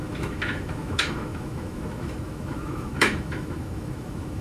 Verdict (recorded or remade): remade